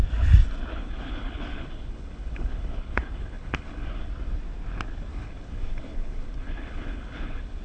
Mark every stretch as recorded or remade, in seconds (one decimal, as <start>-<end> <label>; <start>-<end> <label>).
0.0-0.7 recorded; 0.7-4.1 remade; 4.1-5.1 recorded; 5.1-7.6 remade